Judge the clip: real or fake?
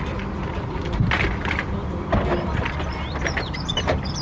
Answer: real